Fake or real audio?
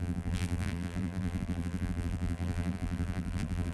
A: fake